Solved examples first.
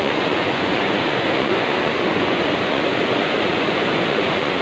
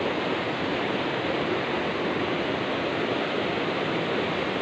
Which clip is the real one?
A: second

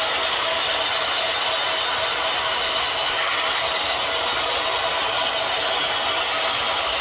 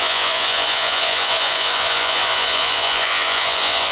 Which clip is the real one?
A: first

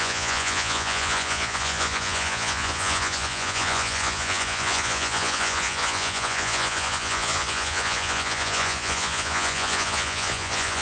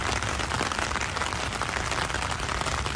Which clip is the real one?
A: second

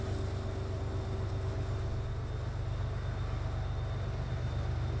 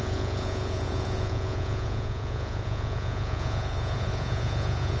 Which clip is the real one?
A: first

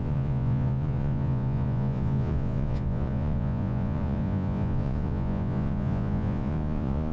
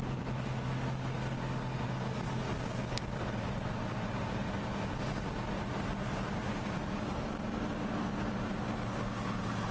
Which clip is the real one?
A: second